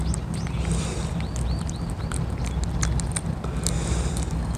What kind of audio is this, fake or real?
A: real